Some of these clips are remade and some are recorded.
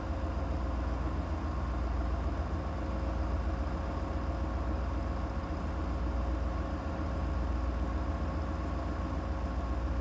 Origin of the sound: recorded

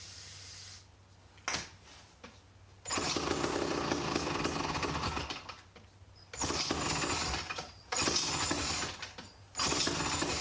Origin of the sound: recorded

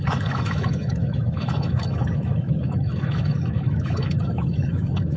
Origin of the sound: remade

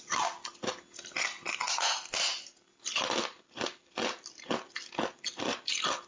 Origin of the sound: recorded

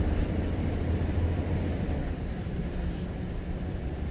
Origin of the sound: remade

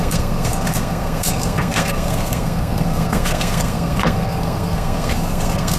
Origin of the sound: remade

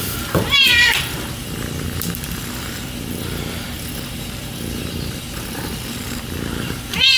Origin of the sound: remade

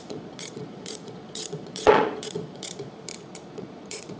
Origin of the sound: remade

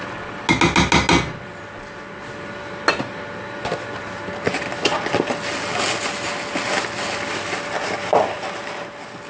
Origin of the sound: recorded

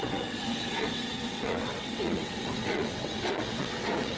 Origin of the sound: remade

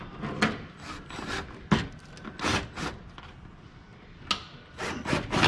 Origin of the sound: recorded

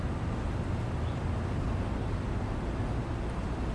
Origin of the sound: recorded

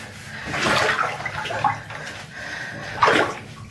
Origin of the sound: recorded